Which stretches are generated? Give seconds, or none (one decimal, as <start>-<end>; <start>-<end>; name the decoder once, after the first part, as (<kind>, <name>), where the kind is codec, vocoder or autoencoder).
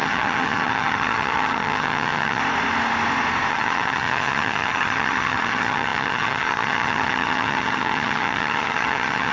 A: 0.0-2.4 (vocoder, HiFi-GAN); 3.5-9.3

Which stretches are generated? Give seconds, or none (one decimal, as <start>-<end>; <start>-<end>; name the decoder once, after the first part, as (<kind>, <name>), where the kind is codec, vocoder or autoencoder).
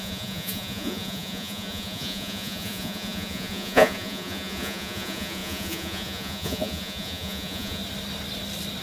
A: 0.0-7.8 (vocoder, Vocos)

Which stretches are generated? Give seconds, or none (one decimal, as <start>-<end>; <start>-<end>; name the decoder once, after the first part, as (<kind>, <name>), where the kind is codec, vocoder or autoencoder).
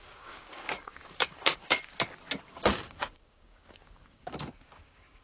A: 0.0-1.9 (codec, DAC); 2.4-5.2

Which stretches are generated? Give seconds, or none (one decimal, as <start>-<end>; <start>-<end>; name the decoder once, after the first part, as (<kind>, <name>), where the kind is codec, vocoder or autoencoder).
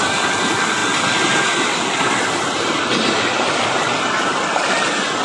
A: none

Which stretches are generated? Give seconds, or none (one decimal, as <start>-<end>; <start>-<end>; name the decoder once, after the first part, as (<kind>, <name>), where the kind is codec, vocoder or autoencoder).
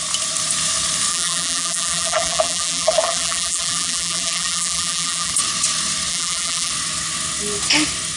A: 1.1-5.3 (vocoder, BigVGAN v2); 6.1-6.7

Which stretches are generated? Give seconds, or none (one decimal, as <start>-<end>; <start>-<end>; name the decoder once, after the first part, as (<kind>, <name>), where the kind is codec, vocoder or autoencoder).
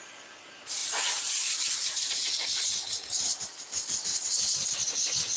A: 0.8-2.1 (vocoder, BigVGAN v2)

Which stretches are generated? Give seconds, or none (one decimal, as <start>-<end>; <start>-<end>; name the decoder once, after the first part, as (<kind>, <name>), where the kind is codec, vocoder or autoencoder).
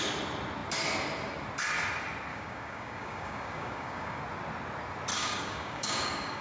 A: 2.3-4.2 (codec, DAC); 5.1-6.4